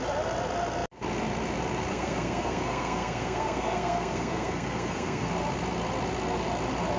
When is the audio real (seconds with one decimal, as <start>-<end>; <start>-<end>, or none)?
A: 0.0-1.9; 5.3-7.0